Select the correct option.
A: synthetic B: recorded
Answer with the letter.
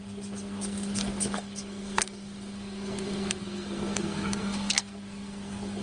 A